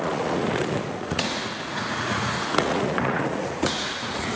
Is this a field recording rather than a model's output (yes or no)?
no